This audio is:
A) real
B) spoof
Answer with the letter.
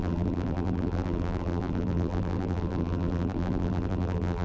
B